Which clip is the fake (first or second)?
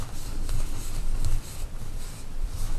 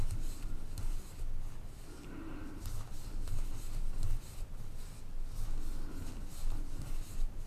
first